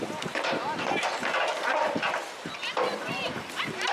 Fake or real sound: fake